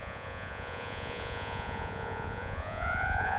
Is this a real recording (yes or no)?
no